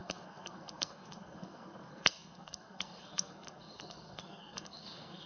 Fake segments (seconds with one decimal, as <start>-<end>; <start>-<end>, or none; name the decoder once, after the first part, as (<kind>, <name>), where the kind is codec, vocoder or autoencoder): 0.0-5.3 (codec, SNAC)

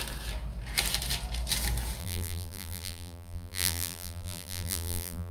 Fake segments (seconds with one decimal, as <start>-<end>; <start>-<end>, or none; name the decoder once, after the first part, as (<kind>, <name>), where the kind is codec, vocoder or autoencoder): 2.0-5.3 (vocoder, BigVGAN v2)

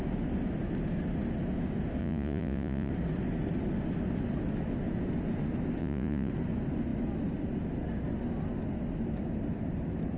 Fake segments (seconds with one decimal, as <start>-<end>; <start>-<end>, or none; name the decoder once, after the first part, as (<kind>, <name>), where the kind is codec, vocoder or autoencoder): 2.0-2.9 (vocoder, Vocos); 5.8-6.3

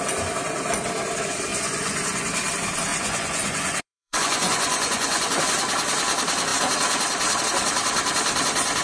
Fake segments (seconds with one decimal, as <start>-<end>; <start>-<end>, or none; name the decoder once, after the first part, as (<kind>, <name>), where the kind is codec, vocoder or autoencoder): 1.5-2.3 (vocoder, Vocos); 2.9-5.4